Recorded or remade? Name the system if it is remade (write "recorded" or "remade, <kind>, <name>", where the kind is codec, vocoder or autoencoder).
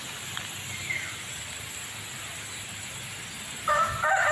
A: recorded